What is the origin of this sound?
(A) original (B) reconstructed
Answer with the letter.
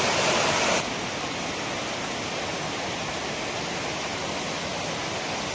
A